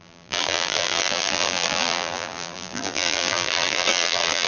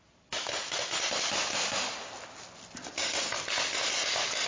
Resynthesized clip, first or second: first